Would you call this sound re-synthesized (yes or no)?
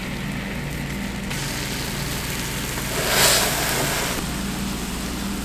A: no